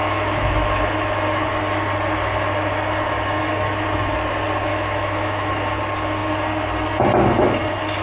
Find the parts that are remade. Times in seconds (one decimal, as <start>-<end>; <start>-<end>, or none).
0.0-0.8; 4.7-5.5